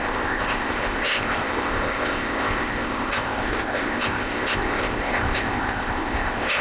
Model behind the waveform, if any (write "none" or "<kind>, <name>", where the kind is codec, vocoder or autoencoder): codec, ZipCodec